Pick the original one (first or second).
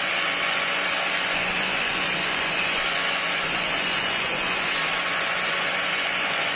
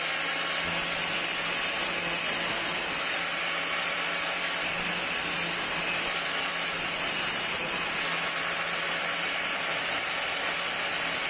second